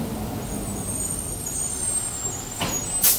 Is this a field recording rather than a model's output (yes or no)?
yes